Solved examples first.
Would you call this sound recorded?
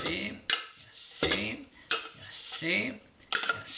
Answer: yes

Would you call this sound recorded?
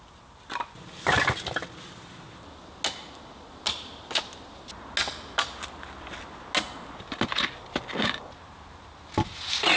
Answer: yes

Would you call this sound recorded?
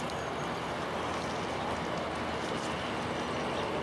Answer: yes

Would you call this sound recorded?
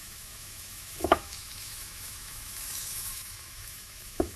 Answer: no